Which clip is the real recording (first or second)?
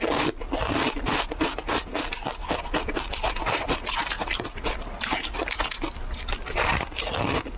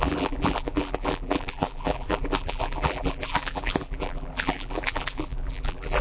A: first